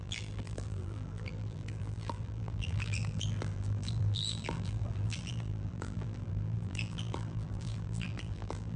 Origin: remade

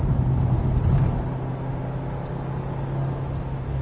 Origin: recorded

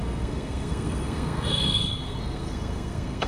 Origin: remade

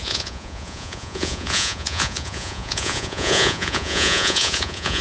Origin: remade